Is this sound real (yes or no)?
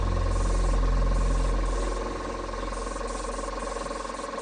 yes